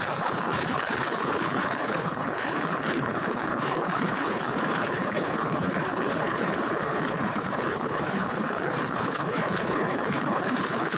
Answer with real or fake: fake